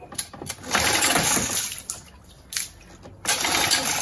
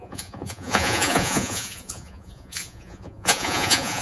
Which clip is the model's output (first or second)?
second